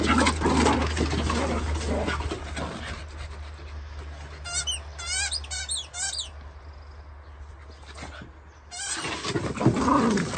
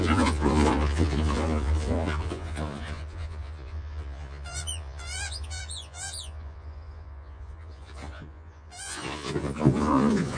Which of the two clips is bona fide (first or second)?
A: first